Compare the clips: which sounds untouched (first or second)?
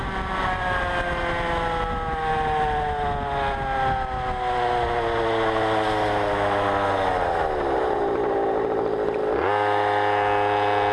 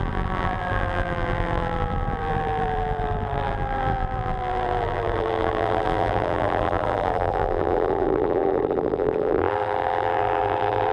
first